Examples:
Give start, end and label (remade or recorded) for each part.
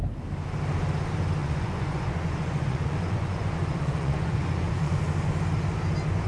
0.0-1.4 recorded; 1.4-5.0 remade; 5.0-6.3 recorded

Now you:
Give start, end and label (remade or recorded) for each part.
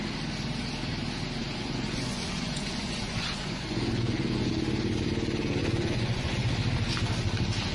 0.0-1.4 recorded; 1.4-4.5 remade; 4.5-5.6 recorded; 5.6-6.5 remade; 6.5-7.7 recorded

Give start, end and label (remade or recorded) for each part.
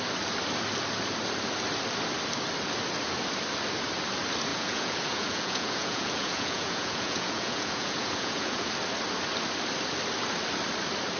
0.0-4.5 recorded; 4.5-8.7 remade; 8.7-11.2 recorded